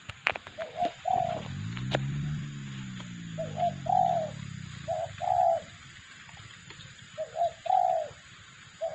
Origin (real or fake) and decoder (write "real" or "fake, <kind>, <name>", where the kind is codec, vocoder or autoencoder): real